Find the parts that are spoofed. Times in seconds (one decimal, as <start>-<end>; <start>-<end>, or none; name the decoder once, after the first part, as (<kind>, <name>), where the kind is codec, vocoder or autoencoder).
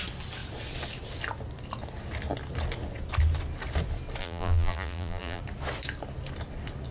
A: 4.2-5.4 (vocoder, BigVGAN v2)